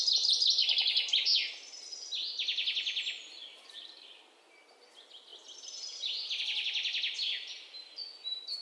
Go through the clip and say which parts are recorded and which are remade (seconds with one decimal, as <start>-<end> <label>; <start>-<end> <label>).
0.0-8.6 recorded